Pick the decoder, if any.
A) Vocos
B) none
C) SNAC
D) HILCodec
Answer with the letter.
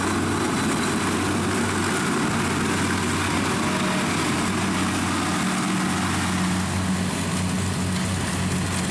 B